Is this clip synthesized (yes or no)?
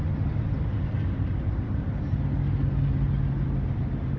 no